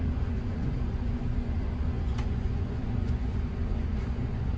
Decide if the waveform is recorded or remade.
remade